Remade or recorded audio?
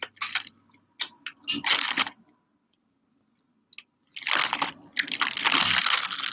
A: recorded